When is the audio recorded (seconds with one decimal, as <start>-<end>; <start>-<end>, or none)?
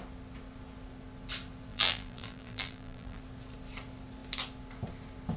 0.0-1.7; 3.2-5.4